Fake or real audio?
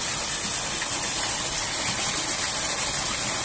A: real